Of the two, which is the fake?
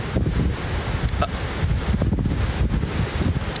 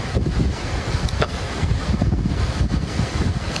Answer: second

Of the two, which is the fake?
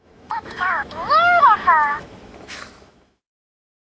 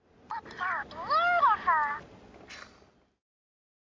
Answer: first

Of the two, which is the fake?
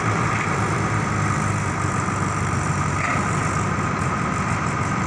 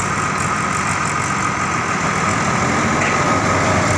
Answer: first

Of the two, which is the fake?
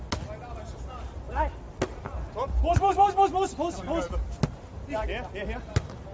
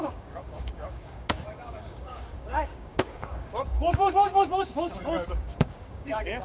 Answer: second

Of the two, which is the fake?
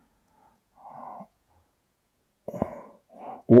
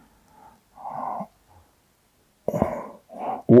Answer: first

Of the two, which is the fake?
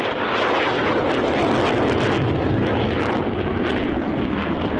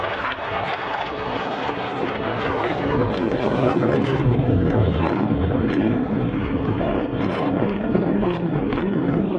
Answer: second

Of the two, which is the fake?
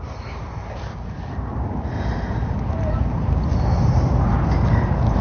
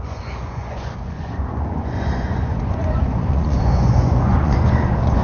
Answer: second